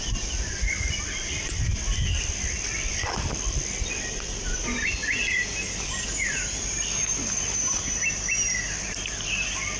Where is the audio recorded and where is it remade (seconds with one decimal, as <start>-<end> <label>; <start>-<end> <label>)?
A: 0.0-9.8 recorded